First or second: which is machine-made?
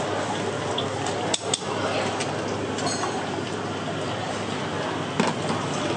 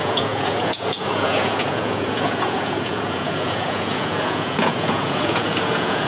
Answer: second